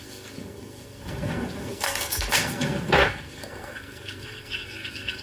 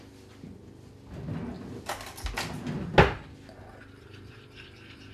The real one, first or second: second